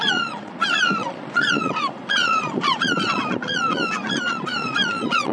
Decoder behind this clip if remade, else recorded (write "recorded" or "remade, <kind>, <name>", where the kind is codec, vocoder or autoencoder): remade, vocoder, Vocos